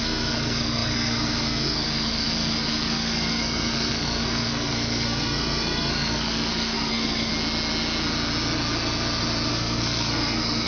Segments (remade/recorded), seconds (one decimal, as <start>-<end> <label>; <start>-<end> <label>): 0.0-7.3 remade; 7.3-9.5 recorded; 9.5-10.7 remade